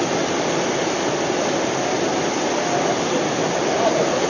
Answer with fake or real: real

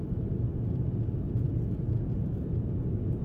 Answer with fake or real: real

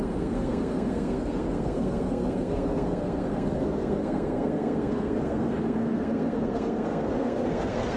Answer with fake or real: fake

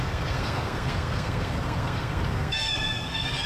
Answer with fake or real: fake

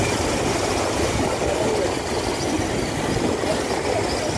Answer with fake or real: real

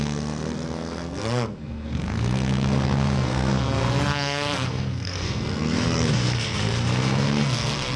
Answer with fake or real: fake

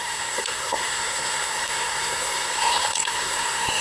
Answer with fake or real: fake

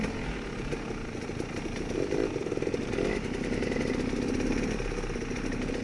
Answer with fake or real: real